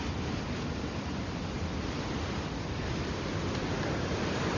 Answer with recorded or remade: recorded